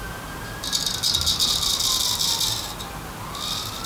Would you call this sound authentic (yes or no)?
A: yes